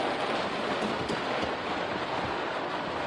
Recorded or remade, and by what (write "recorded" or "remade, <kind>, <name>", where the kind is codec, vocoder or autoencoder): recorded